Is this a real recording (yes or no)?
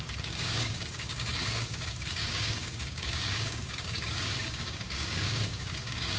no